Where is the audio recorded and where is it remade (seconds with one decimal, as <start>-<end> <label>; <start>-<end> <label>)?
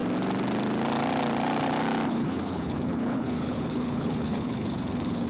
0.0-2.1 recorded; 2.1-5.3 remade